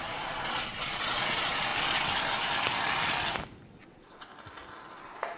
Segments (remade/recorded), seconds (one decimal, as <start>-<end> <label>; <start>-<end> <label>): 0.0-1.7 remade; 1.7-3.8 recorded; 3.8-4.3 remade; 4.3-4.9 recorded; 4.9-5.4 remade